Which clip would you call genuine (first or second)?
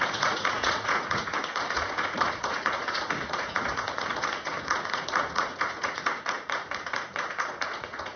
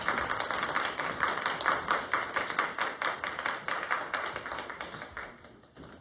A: second